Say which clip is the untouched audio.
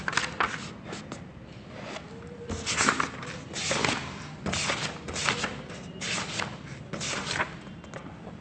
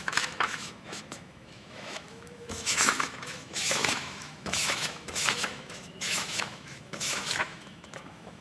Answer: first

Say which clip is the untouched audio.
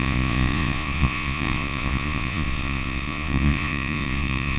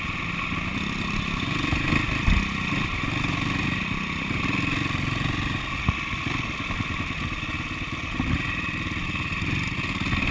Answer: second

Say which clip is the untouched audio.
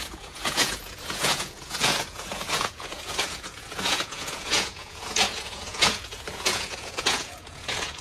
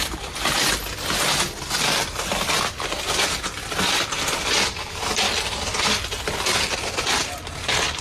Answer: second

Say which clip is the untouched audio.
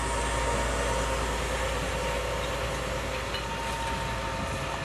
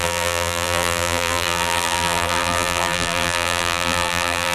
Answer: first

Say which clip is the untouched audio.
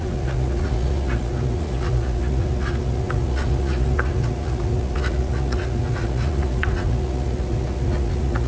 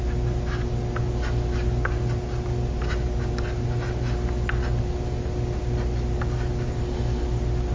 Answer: second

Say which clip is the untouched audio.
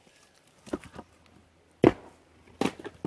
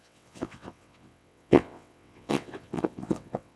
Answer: first